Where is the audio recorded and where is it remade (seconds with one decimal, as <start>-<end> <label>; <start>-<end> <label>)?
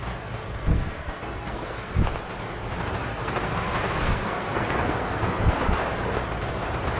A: 0.0-0.4 recorded; 0.4-1.9 remade; 1.9-3.1 recorded; 3.1-5.8 remade; 5.8-7.0 recorded